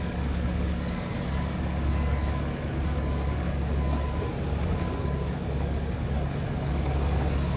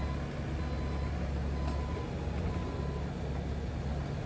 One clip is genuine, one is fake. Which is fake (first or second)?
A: first